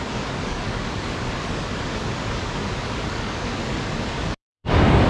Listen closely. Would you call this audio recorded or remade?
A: remade